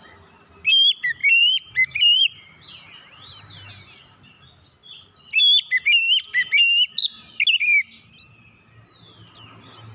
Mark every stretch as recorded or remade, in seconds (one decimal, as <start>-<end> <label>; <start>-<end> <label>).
0.0-1.2 recorded; 1.2-3.7 remade; 3.7-9.9 recorded